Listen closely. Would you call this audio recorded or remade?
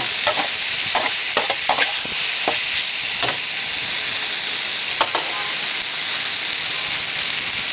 recorded